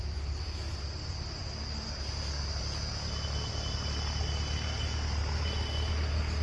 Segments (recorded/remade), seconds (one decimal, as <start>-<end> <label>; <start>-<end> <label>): 0.0-6.4 recorded